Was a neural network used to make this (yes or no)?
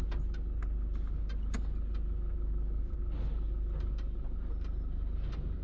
no